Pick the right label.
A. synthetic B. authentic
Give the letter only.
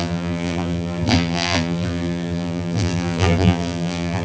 A